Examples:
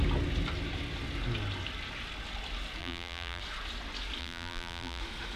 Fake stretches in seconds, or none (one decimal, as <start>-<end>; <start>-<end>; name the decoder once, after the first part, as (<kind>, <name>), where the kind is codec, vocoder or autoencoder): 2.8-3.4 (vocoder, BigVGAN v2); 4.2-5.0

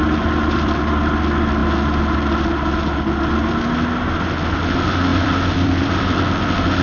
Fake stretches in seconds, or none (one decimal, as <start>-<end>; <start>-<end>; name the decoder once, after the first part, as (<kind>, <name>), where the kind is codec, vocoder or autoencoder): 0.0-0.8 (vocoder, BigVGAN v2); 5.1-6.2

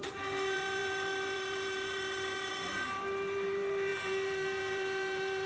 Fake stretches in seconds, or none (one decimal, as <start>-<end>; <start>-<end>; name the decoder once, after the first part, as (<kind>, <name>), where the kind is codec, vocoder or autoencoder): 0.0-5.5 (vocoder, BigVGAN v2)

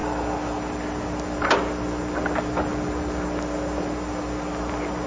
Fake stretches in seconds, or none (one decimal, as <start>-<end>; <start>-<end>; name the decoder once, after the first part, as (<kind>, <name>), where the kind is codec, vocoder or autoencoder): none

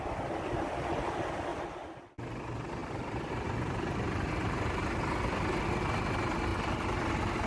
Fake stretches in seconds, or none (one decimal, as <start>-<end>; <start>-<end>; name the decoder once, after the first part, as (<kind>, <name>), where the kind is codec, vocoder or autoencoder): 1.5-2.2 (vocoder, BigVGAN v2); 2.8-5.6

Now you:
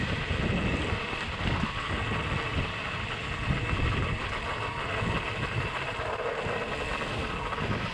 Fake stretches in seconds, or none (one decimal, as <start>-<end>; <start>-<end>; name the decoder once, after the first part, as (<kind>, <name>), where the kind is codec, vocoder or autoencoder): 2.5-4.0 (vocoder, BigVGAN v2)

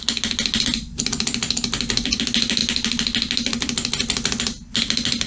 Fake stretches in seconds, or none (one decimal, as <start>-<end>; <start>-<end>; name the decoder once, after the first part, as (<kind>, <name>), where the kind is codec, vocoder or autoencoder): none